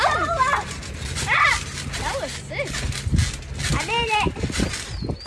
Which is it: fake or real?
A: real